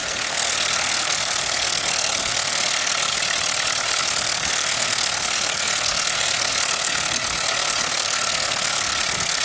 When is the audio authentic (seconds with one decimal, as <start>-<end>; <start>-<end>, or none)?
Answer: 3.1-4.0